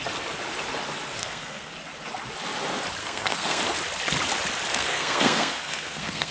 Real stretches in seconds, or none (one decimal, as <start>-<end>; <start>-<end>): 0.0-1.2; 1.7-3.0; 3.6-4.7